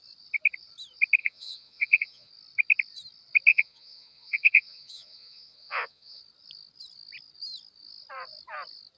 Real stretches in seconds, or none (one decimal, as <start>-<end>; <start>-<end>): 0.0-1.2; 2.3-3.5; 6.2-9.0